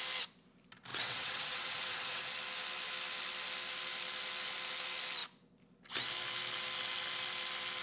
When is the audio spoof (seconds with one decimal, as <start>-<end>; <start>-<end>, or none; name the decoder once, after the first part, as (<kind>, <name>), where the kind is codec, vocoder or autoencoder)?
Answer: 0.9-2.2 (vocoder, WaveNeXt)